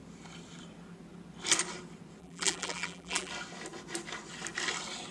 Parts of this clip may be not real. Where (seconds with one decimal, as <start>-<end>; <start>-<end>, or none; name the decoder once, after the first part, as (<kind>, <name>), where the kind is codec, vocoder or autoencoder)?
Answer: 2.2-3.3 (vocoder, BigVGAN v2)